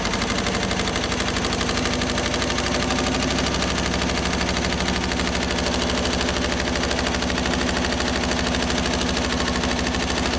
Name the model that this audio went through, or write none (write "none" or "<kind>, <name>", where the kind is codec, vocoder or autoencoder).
none